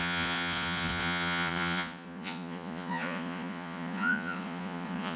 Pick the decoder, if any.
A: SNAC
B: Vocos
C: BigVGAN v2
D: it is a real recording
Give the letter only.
B